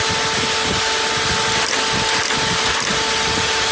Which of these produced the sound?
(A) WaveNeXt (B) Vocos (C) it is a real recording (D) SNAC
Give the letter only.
C